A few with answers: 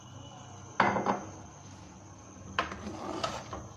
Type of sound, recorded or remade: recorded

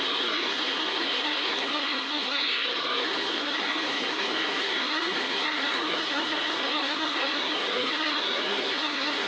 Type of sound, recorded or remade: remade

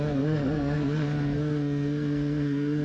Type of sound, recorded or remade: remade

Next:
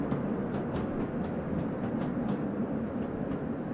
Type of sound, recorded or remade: recorded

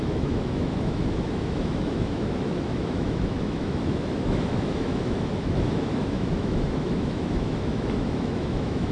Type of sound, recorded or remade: remade